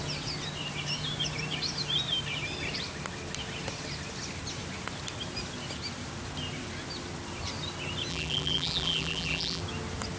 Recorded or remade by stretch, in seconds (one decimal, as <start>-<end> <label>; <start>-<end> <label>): 0.0-8.1 recorded; 8.1-9.6 remade; 9.6-10.2 recorded